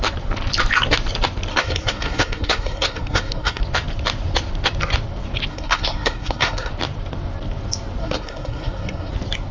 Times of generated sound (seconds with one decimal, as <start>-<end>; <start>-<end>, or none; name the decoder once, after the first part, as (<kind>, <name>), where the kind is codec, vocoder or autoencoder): 1.5-3.6 (codec, SNAC); 5.5-6.7; 8.0-9.1